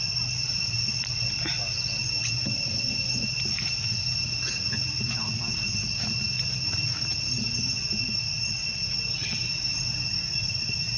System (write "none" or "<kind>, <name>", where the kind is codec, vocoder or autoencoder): none